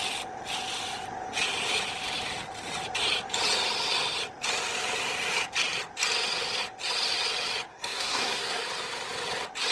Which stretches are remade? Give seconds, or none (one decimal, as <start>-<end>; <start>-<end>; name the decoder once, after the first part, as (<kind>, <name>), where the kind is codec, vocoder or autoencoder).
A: 7.7-8.6 (codec, SNAC)